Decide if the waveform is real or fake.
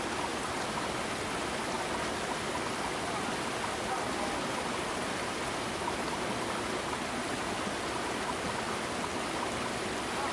real